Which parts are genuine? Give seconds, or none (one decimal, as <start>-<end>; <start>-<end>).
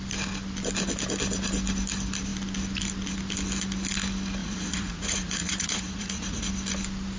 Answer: 0.0-4.4; 6.4-7.2